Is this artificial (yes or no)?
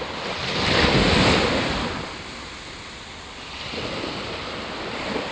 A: no